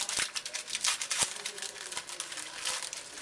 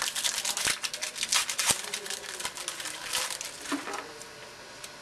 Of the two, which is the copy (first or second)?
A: first